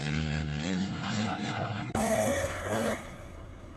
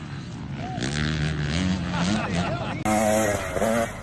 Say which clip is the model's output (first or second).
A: first